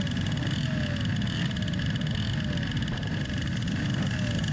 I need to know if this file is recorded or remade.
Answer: recorded